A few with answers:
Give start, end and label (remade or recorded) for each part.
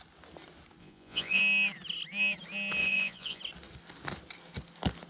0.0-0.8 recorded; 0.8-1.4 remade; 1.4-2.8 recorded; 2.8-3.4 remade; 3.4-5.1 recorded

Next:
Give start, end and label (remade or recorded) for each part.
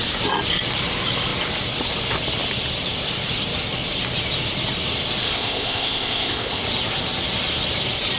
0.0-5.2 recorded; 5.2-6.6 remade; 6.6-8.2 recorded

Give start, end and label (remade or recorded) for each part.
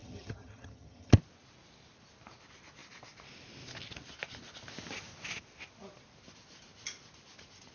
0.0-1.1 remade; 1.1-7.7 recorded